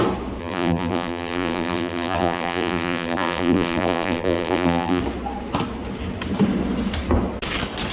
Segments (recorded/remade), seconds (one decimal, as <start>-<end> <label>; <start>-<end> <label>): 0.0-0.4 recorded; 0.4-5.0 remade; 5.0-7.9 recorded